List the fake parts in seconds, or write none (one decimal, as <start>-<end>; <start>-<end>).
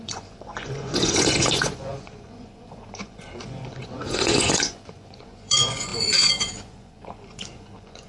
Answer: 0.0-8.1